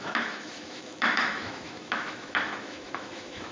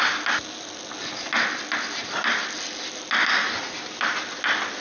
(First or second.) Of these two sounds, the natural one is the second